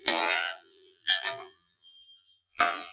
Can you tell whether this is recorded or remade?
remade